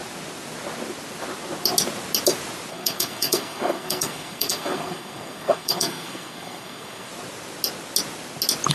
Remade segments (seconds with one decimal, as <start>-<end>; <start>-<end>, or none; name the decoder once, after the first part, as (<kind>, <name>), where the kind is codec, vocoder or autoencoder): 2.7-7.1 (codec, SNAC)